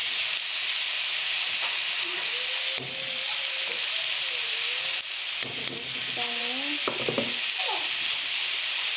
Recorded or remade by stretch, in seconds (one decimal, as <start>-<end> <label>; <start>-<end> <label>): 0.0-9.0 recorded